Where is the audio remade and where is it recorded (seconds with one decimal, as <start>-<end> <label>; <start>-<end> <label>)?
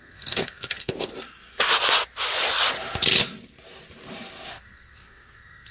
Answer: 0.0-1.1 remade; 1.1-4.5 recorded; 4.5-5.7 remade